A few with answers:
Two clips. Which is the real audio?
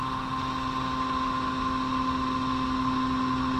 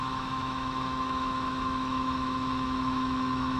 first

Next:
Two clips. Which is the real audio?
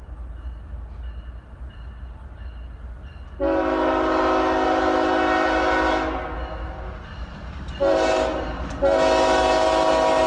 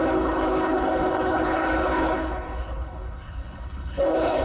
first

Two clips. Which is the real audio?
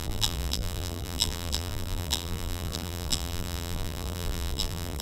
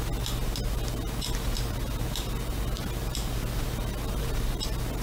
second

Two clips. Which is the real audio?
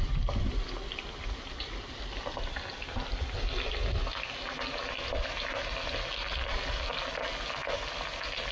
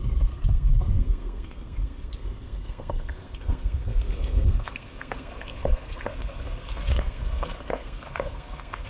first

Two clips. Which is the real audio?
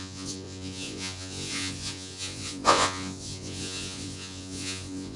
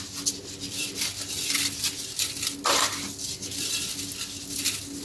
second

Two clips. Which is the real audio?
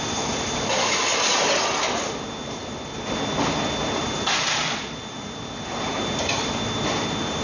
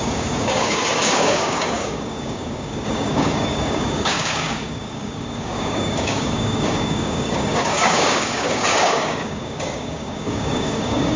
first